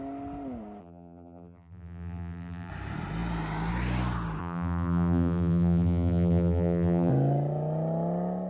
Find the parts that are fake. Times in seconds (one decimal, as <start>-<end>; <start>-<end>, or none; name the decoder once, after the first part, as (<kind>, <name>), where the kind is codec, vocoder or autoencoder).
0.8-2.7 (vocoder, BigVGAN v2); 4.4-7.1

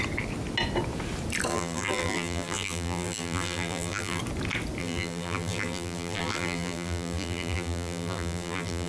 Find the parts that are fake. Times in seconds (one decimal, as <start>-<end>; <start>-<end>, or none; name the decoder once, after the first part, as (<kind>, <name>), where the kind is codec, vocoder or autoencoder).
1.5-4.2 (vocoder, BigVGAN v2); 4.8-8.9

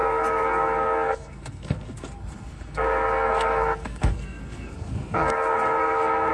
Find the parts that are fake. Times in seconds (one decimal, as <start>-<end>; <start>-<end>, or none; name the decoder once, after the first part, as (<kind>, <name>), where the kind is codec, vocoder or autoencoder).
0.0-6.3 (codec, SNAC)

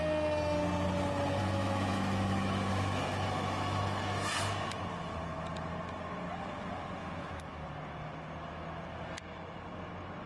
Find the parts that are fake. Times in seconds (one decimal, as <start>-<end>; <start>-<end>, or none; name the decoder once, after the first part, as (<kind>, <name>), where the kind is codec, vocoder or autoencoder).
1.4-4.4 (autoencoder, DAC-VAE); 7.0-7.7

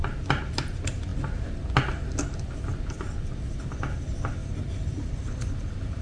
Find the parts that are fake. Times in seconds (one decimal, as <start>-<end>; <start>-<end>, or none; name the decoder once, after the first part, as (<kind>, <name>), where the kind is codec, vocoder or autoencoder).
4.4-6.0 (vocoder, BigVGAN v2)

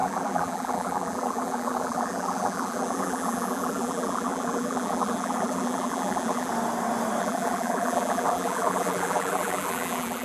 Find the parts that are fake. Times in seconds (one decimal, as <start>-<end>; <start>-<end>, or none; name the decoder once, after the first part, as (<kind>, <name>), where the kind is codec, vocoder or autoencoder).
0.0-6.5 (vocoder, BigVGAN v2); 7.2-10.2

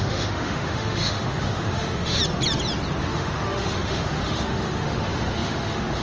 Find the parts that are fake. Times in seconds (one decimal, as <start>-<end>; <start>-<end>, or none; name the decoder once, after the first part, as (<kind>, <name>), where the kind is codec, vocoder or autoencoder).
0.0-2.2 (autoencoder, DAC-VAE); 3.0-6.0

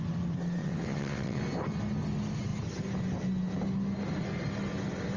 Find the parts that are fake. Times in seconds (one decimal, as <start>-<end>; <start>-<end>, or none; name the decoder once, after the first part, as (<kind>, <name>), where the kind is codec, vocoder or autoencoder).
0.6-1.4 (vocoder, WaveNeXt)